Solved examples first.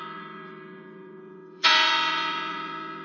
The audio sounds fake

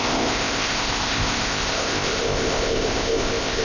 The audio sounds fake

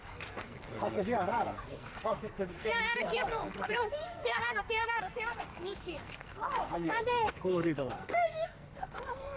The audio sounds fake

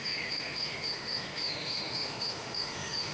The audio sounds fake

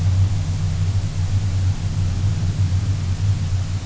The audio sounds real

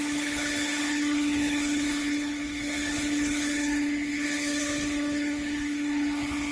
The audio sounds fake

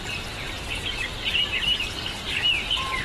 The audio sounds real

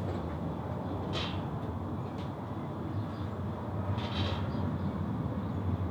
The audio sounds real